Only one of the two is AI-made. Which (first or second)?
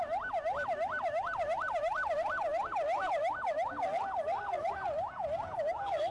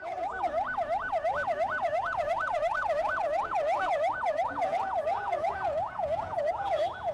second